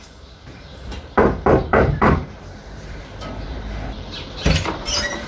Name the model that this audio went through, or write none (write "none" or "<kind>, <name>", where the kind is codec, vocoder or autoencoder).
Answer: vocoder, BigVGAN v2